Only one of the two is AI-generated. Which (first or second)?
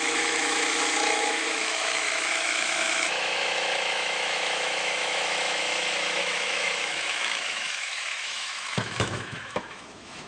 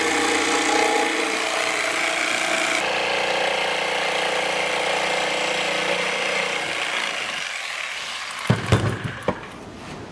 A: first